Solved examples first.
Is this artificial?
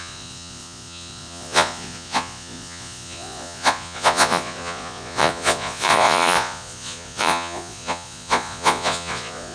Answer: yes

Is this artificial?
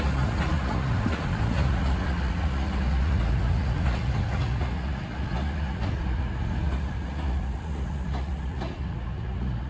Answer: yes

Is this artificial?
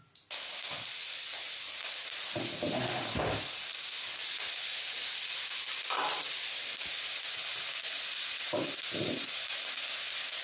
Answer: no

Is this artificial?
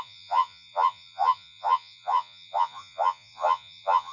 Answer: yes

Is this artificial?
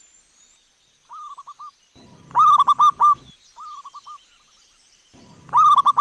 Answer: no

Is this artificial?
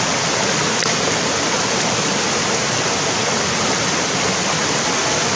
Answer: no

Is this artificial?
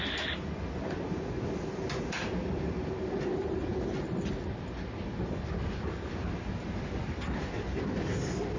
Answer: no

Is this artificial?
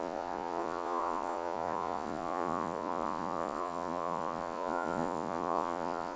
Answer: yes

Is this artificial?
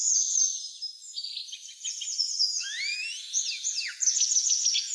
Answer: no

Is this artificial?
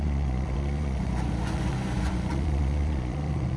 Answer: yes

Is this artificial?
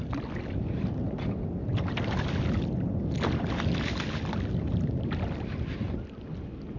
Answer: no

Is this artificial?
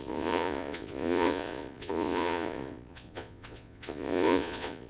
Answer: yes